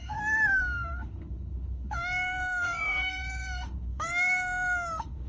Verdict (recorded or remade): remade